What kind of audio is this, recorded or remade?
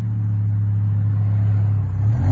recorded